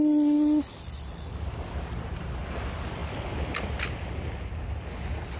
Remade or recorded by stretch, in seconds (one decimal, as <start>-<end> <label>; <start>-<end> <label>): 0.0-5.4 recorded